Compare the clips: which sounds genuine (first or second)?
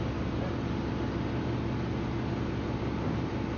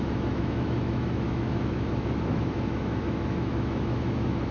first